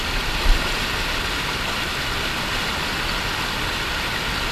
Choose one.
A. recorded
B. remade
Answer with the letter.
A